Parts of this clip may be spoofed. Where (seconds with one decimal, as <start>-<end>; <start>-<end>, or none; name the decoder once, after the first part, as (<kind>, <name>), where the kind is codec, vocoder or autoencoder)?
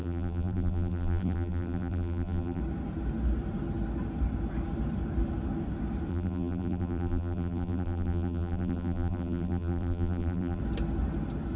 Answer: 0.0-2.6 (vocoder, BigVGAN v2); 6.1-10.6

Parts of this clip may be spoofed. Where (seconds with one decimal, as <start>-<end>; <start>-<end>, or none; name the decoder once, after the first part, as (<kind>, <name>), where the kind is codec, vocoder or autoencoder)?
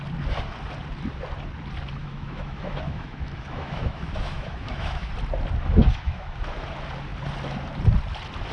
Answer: 2.0-5.1 (autoencoder, DAC-VAE); 5.8-6.4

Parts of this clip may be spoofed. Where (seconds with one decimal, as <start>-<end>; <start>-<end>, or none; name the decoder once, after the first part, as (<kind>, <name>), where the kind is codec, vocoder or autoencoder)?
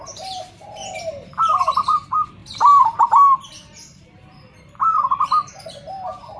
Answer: 0.0-0.8 (vocoder, BigVGAN v2); 1.4-2.4; 3.1-6.4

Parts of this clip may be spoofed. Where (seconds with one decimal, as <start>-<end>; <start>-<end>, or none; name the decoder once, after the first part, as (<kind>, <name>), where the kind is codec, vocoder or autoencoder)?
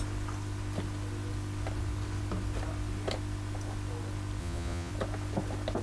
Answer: 4.4-4.9 (vocoder, Vocos)